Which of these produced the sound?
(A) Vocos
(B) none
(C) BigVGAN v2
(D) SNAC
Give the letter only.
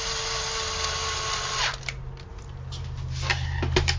B